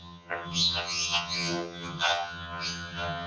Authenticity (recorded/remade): remade